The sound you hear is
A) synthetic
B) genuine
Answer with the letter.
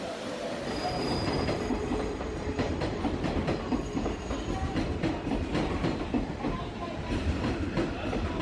A